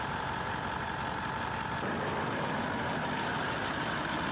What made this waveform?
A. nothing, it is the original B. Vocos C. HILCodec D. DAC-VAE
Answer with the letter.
A